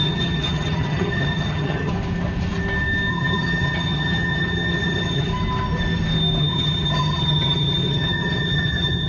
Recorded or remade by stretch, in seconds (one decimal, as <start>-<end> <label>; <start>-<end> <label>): 0.0-1.9 remade; 1.9-3.1 recorded; 3.1-5.3 remade; 5.3-6.4 recorded; 6.4-9.1 remade